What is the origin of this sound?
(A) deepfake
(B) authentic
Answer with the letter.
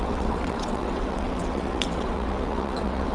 A